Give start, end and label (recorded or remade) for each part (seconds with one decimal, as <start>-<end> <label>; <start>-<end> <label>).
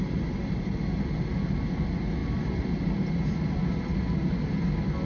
0.0-2.2 recorded; 2.2-2.9 remade; 2.9-5.1 recorded